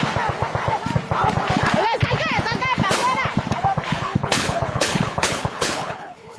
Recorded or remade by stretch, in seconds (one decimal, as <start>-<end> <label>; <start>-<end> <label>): 0.0-3.9 recorded; 3.9-6.4 remade